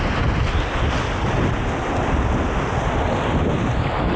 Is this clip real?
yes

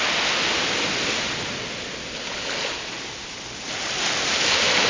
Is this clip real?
yes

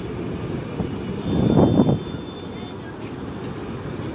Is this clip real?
yes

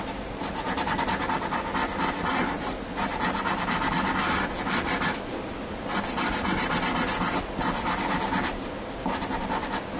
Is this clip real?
yes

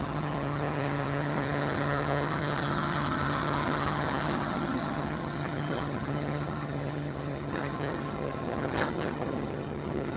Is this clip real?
no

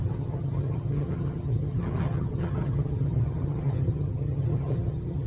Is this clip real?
no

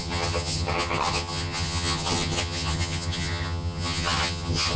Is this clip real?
no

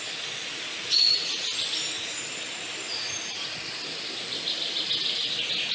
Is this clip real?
yes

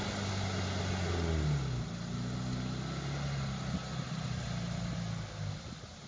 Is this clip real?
yes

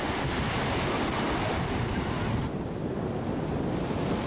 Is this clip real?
yes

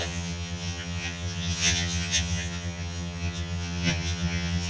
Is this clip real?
no